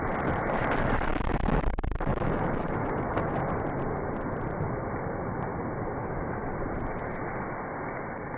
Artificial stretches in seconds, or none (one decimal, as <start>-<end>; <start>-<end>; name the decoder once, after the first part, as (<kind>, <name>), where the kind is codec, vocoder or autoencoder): 1.1-3.4 (autoencoder, DAC-VAE); 6.0-6.5